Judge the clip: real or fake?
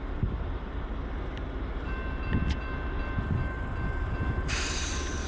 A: real